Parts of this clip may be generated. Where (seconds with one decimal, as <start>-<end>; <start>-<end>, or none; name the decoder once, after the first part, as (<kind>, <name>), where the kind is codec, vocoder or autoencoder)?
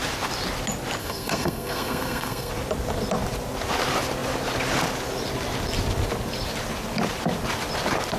1.0-2.5 (codec, SNAC)